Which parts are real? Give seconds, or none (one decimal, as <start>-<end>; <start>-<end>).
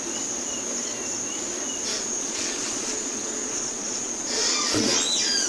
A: 0.0-1.9